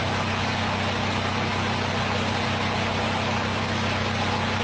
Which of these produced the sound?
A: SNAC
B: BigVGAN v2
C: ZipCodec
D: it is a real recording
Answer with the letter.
D